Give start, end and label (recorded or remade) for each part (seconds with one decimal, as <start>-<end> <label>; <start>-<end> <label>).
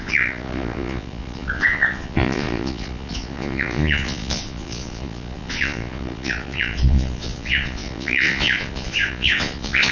0.0-9.9 remade